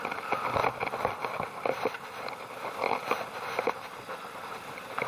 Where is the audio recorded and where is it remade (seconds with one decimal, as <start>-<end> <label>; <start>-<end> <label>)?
0.0-5.1 recorded